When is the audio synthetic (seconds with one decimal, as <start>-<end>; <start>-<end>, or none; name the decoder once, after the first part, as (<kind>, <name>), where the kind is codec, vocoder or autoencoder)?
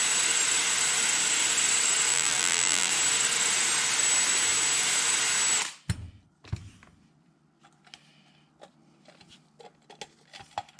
2.1-2.9 (vocoder, BigVGAN v2)